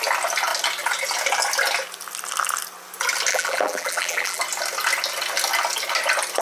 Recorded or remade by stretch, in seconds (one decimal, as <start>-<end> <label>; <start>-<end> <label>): 0.0-3.3 recorded; 3.3-4.4 remade; 4.4-6.4 recorded